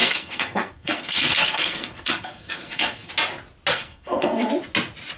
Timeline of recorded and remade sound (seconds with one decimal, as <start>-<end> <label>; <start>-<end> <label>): 0.0-3.1 remade; 3.1-3.7 recorded; 3.7-4.5 remade; 4.5-5.2 recorded